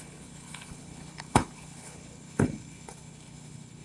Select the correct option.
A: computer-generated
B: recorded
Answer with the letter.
A